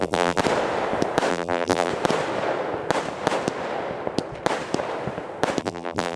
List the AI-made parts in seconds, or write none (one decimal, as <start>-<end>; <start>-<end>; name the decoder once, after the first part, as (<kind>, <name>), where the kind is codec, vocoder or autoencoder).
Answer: 0.0-0.4 (vocoder, BigVGAN v2); 1.3-1.9; 5.6-6.2